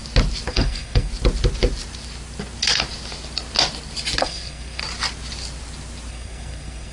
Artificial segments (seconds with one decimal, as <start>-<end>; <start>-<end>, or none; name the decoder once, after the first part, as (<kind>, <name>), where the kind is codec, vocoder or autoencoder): 0.5-1.1 (codec, SNAC); 4.2-4.8; 6.1-6.9